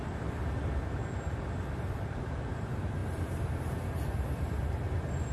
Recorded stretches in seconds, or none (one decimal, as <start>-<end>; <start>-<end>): 0.4-1.7; 3.0-3.8